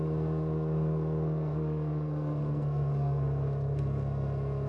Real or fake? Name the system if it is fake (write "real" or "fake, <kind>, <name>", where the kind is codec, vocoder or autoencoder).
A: fake, codec, SNAC